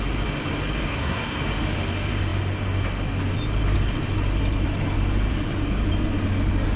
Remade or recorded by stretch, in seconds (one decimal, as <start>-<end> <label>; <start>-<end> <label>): 0.0-0.9 recorded; 0.9-1.4 remade; 1.4-6.8 recorded

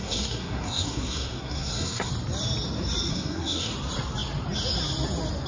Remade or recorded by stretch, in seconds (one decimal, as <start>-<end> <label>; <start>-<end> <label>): 0.0-2.1 remade; 2.1-3.1 recorded; 3.1-3.7 remade; 3.7-5.5 recorded

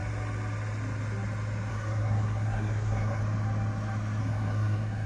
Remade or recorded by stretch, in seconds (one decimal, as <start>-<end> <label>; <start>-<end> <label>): 0.0-1.7 recorded; 1.7-3.2 remade; 3.2-4.2 recorded; 4.2-5.1 remade

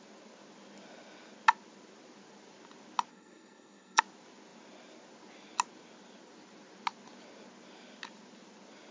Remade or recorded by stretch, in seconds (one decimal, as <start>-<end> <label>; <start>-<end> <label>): 0.0-3.1 recorded; 3.1-4.0 remade; 4.0-8.9 recorded

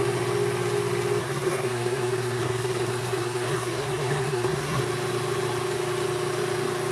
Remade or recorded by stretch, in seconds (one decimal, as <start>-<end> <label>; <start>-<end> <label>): 0.0-1.2 recorded; 1.2-4.8 remade; 4.8-6.9 recorded

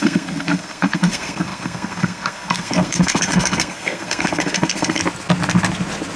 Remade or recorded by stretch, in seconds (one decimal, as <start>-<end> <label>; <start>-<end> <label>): 0.0-5.0 remade; 5.0-6.2 recorded

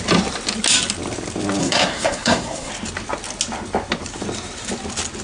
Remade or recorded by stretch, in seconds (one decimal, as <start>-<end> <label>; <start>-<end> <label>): 0.0-1.6 recorded; 1.6-2.7 remade; 2.7-5.2 recorded